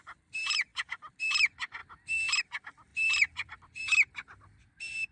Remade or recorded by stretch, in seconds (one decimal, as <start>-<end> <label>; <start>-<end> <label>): 0.0-0.7 recorded; 0.7-1.2 remade; 1.2-1.8 recorded; 1.8-2.4 remade; 2.4-2.9 recorded; 2.9-3.8 remade; 3.8-5.1 recorded